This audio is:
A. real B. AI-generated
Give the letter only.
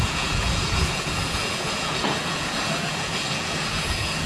B